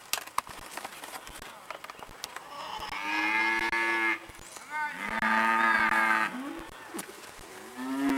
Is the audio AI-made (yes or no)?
no